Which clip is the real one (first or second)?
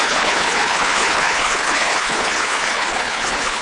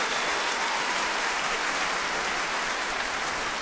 second